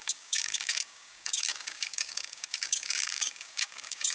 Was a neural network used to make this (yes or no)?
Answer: yes